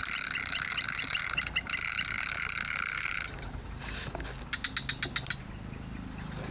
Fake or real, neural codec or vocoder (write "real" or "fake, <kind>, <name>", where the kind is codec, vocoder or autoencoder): real